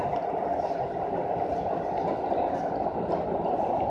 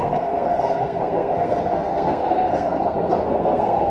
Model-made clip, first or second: second